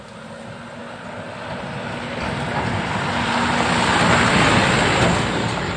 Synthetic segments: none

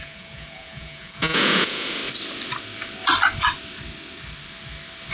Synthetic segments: 0.0-2.0 (vocoder, Vocos)